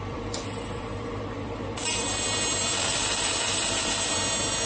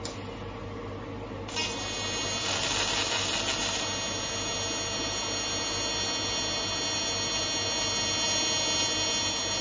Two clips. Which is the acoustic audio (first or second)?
second